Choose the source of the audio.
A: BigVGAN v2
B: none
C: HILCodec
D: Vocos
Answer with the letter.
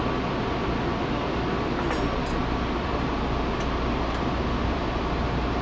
B